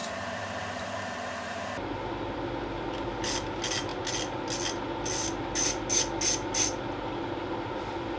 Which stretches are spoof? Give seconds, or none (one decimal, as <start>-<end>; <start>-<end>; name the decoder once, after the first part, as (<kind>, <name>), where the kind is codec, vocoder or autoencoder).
0.0-1.7 (vocoder, BigVGAN v2)